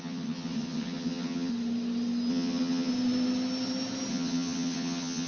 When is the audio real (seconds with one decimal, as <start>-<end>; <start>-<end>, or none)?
1.5-2.3; 2.9-4.1